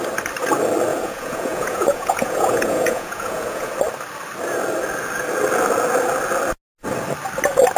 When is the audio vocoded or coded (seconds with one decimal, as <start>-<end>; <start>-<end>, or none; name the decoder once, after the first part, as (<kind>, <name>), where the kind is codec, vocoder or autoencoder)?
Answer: 0.9-3.7 (vocoder, Vocos)

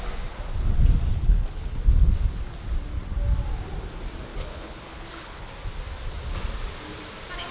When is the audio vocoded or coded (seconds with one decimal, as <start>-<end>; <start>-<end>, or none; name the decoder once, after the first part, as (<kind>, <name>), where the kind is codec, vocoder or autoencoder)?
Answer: 1.1-1.8 (codec, HILCodec); 4.3-5.5

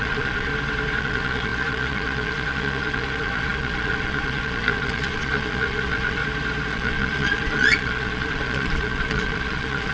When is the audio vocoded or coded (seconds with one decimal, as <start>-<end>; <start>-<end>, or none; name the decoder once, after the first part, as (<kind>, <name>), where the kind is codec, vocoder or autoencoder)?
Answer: 0.0-0.5 (vocoder, Vocos); 1.0-6.2; 6.7-9.9

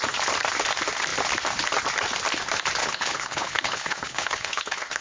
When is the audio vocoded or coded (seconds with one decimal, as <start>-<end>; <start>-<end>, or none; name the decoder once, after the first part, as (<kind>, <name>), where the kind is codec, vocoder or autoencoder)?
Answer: 2.8-5.0 (codec, HILCodec)